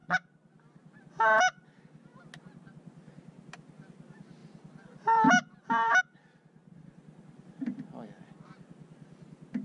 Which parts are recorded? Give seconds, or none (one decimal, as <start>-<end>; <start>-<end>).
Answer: 0.0-4.4; 6.0-6.6; 8.4-9.6